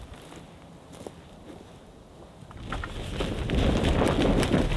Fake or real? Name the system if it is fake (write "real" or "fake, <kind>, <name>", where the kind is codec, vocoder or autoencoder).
real